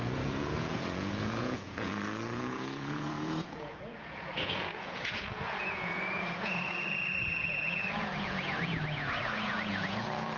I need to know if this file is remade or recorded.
remade